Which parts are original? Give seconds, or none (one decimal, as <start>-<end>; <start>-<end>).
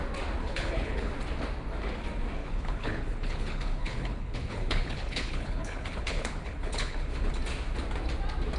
0.0-0.4; 1.1-2.4; 7.3-8.6